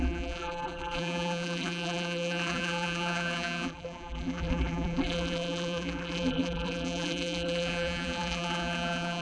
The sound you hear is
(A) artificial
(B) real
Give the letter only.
A